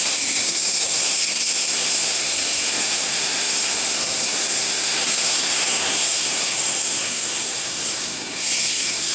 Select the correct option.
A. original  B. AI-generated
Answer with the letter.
B